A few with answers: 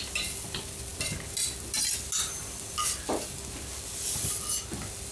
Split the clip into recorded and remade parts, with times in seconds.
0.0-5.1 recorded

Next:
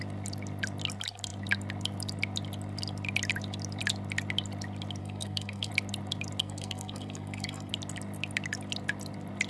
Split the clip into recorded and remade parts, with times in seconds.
0.0-5.0 recorded; 5.0-5.7 remade; 5.7-6.4 recorded; 6.4-7.7 remade; 7.7-9.5 recorded

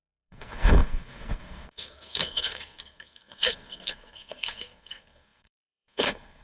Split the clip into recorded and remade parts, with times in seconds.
0.0-6.4 remade

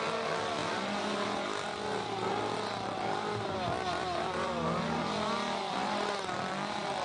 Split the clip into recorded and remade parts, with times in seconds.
0.0-7.0 recorded

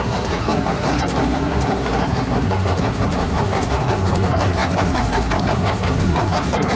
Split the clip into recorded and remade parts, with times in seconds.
0.0-6.8 remade

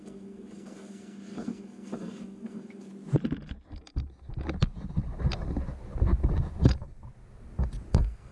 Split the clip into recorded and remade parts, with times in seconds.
0.0-2.9 remade; 2.9-7.9 recorded; 7.9-8.3 remade

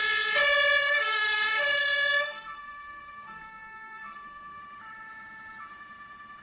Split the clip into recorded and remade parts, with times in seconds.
0.0-0.8 recorded; 0.8-4.6 remade; 4.6-6.4 recorded